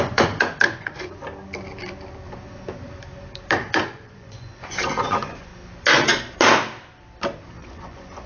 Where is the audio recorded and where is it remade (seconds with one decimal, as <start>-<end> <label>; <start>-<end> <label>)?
0.0-1.2 remade; 1.2-3.6 recorded; 3.6-5.5 remade; 5.5-7.6 recorded; 7.6-8.3 remade